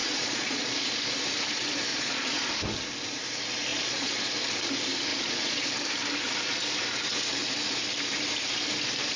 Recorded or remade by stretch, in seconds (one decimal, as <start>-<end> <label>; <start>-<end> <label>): 0.0-0.9 remade; 0.9-1.9 recorded; 1.9-2.5 remade; 2.5-3.7 recorded; 3.7-4.3 remade; 4.3-5.1 recorded; 5.1-5.7 remade; 5.7-9.2 recorded